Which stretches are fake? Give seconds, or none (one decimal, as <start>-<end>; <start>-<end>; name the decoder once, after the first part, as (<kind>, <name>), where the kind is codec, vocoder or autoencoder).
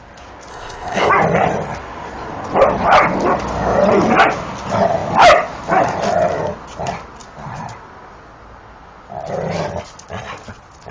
0.5-1.1 (codec, ZipCodec)